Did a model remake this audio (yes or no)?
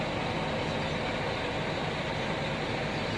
no